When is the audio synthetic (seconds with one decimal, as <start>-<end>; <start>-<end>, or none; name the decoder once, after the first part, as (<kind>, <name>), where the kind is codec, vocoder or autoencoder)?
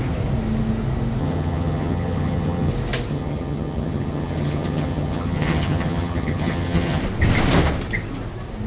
1.2-2.7 (vocoder, HiFi-GAN); 3.1-7.0